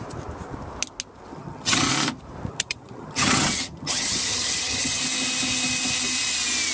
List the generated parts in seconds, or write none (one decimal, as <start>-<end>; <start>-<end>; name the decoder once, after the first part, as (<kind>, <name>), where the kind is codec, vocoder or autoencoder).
1.3-1.9 (vocoder, HiFi-GAN); 2.5-5.0